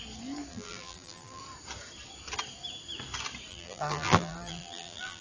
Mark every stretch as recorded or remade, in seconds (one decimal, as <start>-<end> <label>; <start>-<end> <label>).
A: 0.0-0.5 recorded; 0.5-1.4 remade; 1.4-3.5 recorded; 3.5-5.2 remade